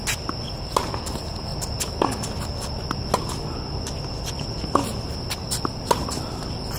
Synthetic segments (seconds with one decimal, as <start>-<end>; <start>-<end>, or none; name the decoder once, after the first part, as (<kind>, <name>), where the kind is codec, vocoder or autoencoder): none